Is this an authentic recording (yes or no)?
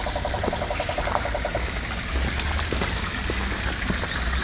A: yes